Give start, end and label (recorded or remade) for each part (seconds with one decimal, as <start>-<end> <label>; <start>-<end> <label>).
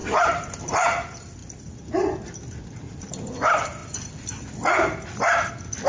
0.0-5.9 recorded